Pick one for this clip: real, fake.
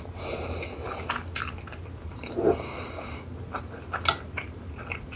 real